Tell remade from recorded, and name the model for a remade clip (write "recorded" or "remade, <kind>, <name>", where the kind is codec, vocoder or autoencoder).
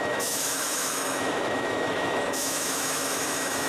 remade, autoencoder, DAC-VAE